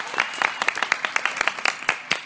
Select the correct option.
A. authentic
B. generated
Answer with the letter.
A